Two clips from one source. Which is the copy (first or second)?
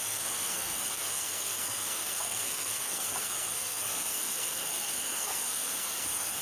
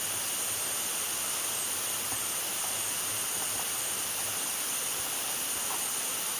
first